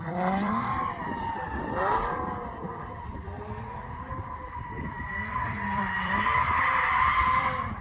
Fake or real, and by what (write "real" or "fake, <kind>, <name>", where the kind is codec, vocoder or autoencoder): fake, vocoder, BigVGAN v2